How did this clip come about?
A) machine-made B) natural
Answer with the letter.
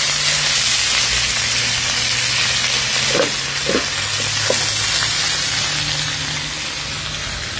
B